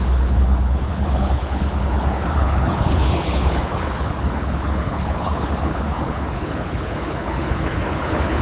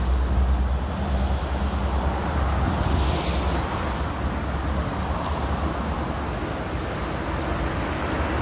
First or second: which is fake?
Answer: first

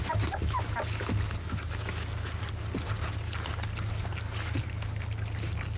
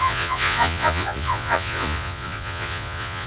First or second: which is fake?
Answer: second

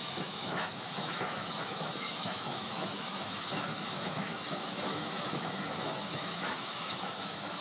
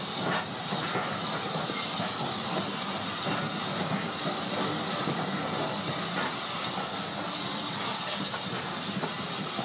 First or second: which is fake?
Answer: first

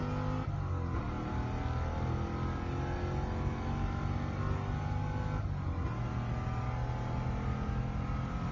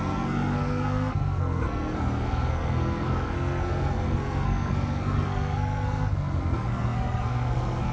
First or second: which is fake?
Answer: second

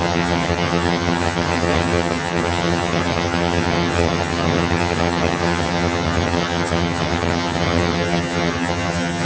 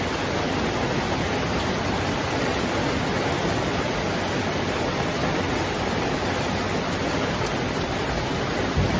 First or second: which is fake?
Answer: first